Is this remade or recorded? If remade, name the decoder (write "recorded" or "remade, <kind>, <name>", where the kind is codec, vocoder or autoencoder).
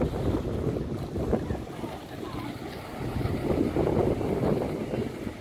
recorded